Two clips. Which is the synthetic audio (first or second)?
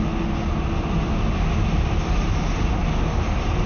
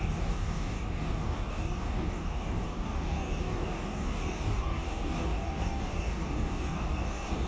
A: second